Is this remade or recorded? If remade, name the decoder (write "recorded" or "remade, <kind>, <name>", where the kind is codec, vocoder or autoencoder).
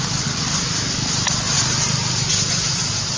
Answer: recorded